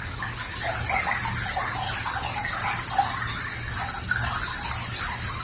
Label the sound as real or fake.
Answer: real